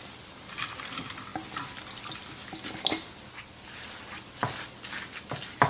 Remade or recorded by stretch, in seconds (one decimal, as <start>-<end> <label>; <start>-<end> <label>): 0.0-5.7 recorded